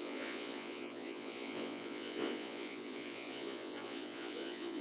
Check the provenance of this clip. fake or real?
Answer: fake